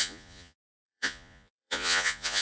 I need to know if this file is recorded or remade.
remade